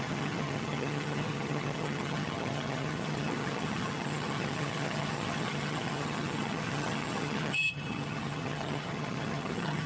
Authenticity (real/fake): fake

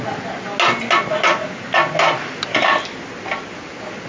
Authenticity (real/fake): real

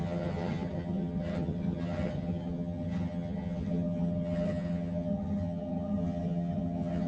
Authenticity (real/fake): fake